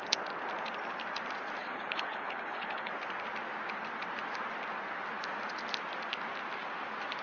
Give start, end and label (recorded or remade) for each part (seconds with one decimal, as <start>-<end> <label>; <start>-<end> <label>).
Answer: 0.0-1.6 recorded; 1.6-2.9 remade; 2.9-7.2 recorded